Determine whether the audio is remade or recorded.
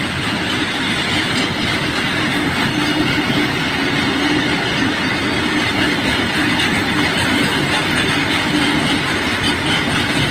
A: recorded